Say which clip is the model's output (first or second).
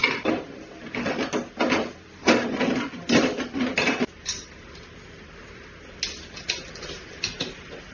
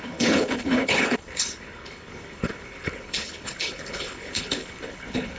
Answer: second